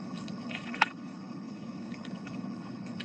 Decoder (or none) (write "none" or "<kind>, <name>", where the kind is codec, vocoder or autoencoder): codec, HILCodec